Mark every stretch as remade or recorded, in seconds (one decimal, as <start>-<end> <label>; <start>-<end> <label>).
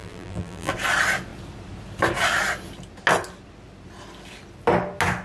0.0-0.7 remade; 0.7-5.2 recorded